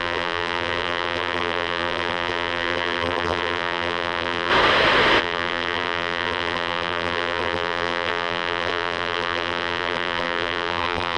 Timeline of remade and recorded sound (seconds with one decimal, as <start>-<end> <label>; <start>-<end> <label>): 0.0-4.5 remade; 4.5-5.2 recorded; 5.2-11.2 remade